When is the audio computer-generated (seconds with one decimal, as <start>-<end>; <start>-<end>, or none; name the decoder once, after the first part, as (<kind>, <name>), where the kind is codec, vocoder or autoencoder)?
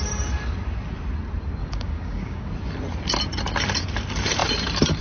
1.6-2.5 (codec, DAC)